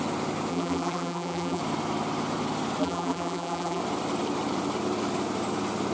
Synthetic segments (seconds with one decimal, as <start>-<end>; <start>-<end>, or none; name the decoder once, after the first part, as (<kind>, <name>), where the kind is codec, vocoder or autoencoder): 0.5-1.6 (vocoder, BigVGAN v2); 2.8-3.8